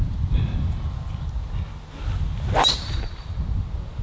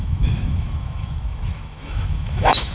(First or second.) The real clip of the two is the first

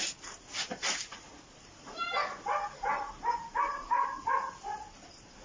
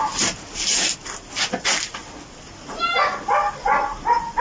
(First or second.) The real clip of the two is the second